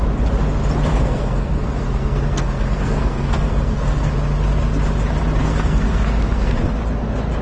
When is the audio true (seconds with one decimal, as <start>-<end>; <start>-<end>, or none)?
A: 0.0-0.9; 4.1-5.4; 6.7-7.4